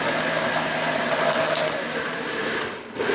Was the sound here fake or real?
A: real